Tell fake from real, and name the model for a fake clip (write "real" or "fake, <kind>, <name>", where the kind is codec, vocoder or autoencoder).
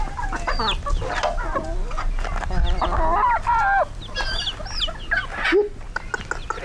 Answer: real